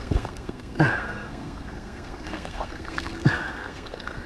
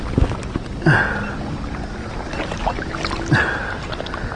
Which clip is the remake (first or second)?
first